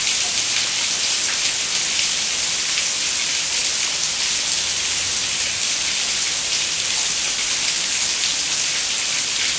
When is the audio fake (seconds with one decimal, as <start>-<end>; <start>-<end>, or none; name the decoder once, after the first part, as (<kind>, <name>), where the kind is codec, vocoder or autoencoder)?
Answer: none